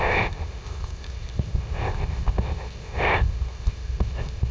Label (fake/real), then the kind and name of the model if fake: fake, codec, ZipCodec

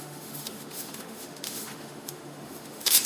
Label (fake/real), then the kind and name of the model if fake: fake, autoencoder, DAC-VAE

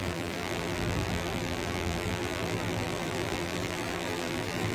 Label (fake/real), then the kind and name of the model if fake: fake, vocoder, BigVGAN v2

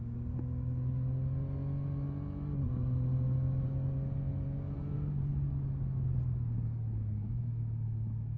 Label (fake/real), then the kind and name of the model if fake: real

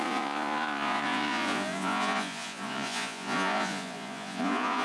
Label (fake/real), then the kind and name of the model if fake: fake, vocoder, Vocos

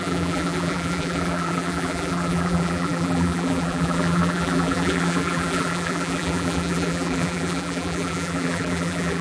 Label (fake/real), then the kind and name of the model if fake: fake, vocoder, BigVGAN v2